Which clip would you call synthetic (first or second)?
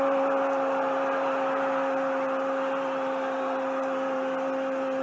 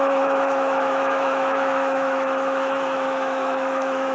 second